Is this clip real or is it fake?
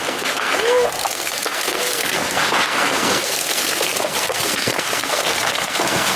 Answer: fake